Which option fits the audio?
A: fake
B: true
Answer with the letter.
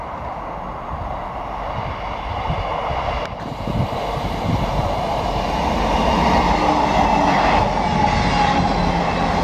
B